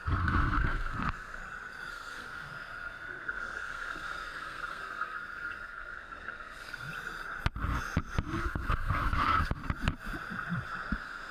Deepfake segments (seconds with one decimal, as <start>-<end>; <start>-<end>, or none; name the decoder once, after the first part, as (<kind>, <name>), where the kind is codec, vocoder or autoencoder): 0.0-1.4 (codec, SNAC); 1.9-6.9; 8.4-9.6; 10.9-11.3